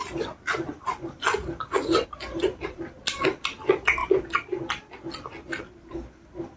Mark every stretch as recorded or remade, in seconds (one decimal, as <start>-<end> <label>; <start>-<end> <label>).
0.0-6.6 recorded